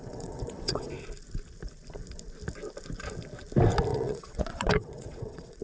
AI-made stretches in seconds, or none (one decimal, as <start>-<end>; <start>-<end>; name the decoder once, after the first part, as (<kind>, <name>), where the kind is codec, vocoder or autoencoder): 0.0-0.9 (vocoder, WaveNeXt); 3.9-5.6